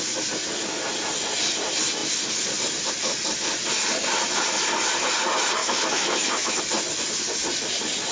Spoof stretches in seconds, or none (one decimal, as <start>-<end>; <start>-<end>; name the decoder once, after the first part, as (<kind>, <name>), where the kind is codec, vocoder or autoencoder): 5.6-6.6 (autoencoder, DAC-VAE)